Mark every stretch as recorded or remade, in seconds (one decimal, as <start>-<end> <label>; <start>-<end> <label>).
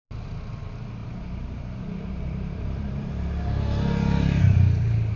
0.0-1.0 recorded; 1.0-3.1 remade; 3.1-5.2 recorded